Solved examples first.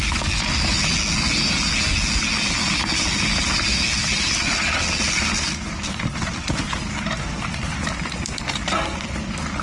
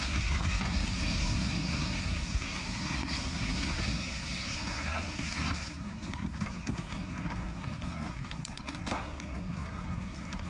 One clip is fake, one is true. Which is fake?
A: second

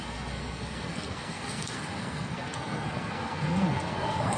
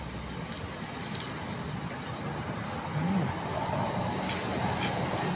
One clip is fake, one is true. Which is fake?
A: first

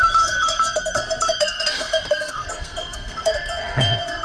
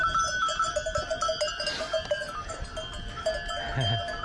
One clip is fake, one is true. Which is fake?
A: first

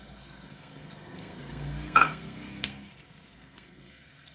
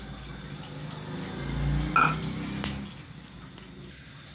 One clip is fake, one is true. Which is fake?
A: first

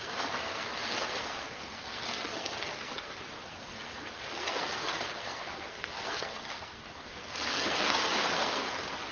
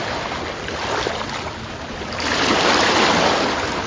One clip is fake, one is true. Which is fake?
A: first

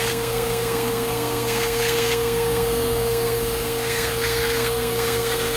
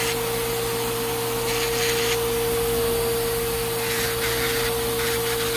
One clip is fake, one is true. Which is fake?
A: first